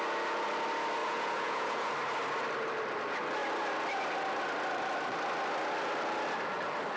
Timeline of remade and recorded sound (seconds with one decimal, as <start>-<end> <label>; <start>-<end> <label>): 0.0-1.0 recorded; 1.0-1.9 remade; 1.9-7.0 recorded